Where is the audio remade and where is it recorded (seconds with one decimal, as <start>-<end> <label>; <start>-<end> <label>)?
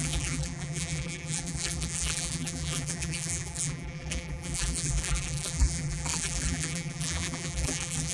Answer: 0.0-8.1 remade